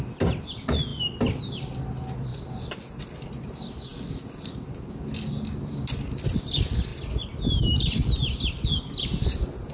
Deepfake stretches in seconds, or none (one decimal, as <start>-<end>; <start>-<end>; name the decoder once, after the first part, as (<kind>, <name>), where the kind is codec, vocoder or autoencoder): none